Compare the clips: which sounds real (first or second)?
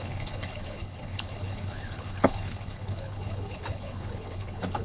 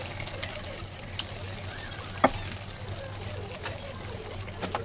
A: second